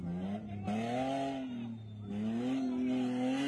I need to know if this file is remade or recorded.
recorded